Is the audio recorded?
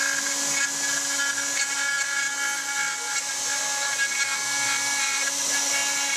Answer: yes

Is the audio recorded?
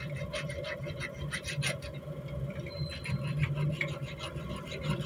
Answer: yes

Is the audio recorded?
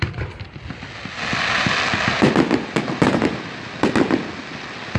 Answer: yes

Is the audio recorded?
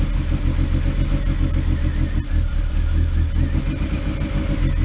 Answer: yes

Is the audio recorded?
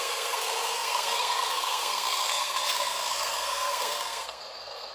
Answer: no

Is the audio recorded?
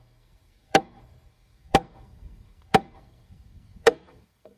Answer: no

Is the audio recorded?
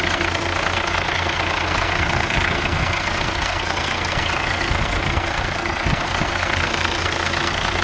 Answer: no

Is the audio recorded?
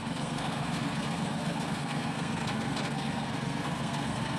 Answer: no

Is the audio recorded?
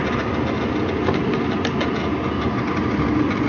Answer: yes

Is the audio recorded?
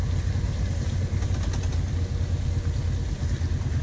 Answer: yes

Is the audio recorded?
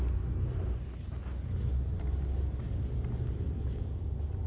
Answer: yes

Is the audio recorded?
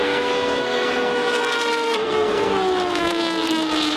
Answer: no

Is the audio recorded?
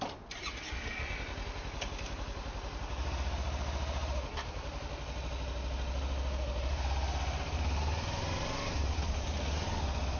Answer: yes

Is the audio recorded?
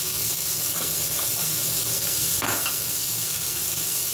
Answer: no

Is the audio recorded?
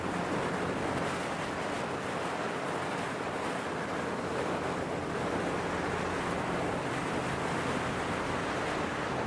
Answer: yes